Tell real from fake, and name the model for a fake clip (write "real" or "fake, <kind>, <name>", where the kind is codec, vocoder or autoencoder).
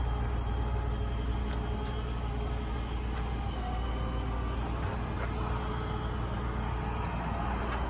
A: real